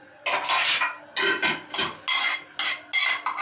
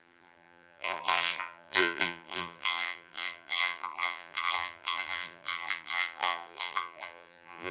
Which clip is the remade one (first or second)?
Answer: second